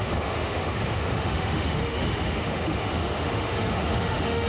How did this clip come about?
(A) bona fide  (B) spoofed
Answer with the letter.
B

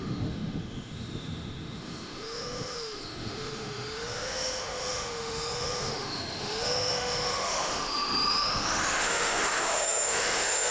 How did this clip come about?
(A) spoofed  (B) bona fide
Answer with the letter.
A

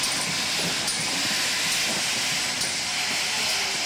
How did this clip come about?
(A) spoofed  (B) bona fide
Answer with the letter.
B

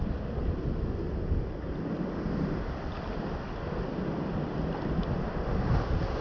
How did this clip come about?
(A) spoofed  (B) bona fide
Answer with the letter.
B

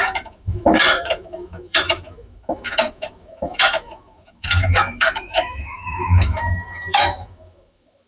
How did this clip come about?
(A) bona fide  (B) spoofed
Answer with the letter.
B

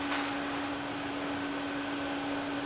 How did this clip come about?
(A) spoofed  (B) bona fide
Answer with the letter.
B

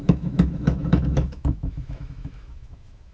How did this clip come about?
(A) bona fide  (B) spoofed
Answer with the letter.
B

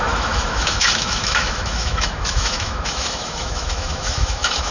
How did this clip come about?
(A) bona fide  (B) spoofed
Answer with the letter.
B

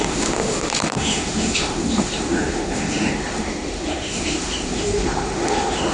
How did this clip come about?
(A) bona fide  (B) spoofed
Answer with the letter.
B